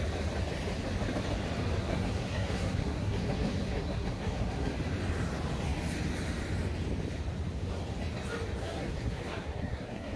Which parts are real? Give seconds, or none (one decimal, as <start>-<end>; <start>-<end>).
0.0-1.8; 4.7-8.6